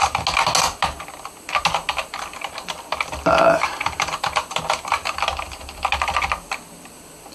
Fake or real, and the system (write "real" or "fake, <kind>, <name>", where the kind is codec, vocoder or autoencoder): real